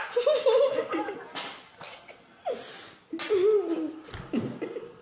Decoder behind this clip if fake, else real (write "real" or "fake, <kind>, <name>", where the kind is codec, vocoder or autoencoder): real